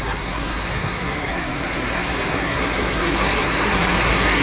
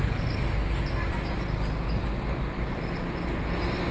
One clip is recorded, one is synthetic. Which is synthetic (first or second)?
first